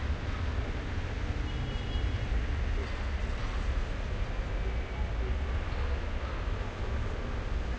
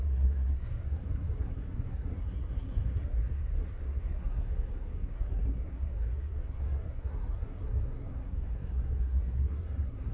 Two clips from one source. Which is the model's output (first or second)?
second